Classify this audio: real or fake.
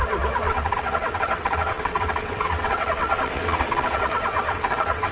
fake